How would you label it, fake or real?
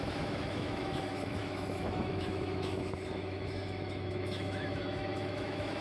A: fake